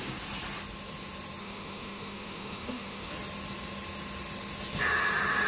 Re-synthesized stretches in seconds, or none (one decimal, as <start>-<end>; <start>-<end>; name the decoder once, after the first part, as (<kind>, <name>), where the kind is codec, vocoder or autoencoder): 1.4-3.1 (autoencoder, DAC-VAE)